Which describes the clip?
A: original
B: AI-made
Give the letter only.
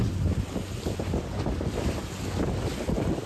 A